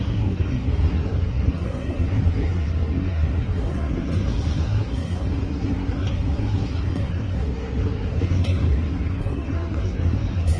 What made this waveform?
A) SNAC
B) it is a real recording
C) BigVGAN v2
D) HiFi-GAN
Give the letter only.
A